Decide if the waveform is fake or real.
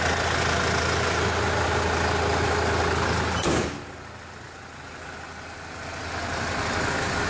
real